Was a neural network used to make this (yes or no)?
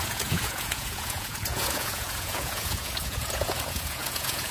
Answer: yes